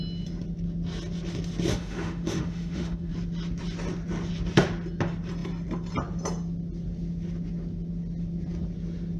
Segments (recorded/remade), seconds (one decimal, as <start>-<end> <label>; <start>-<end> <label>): 0.0-1.7 recorded; 1.7-3.1 remade; 3.1-9.2 recorded